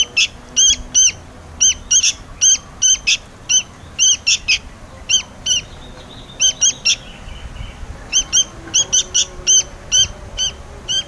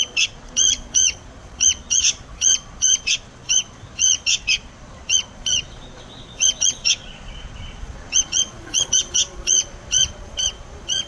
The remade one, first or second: second